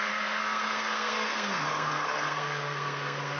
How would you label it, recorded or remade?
remade